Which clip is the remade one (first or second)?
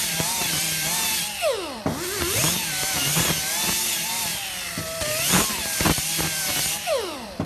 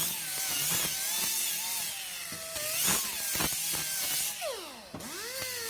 first